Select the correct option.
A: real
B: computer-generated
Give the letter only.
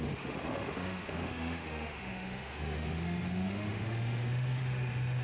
B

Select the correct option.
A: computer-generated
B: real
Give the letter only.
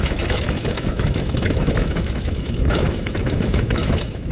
A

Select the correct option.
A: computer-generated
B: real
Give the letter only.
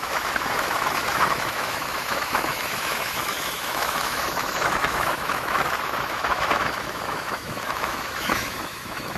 A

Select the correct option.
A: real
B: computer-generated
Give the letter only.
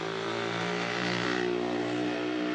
A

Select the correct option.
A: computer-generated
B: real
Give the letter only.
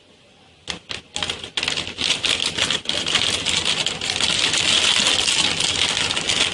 B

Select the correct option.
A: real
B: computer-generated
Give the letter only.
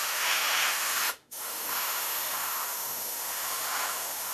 B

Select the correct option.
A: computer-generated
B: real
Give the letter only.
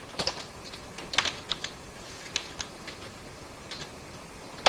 B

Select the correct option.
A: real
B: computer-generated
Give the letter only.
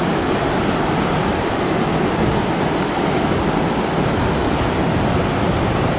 A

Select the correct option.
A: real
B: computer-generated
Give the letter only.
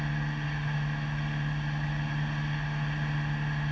A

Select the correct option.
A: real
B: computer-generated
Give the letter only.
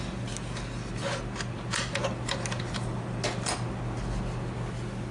A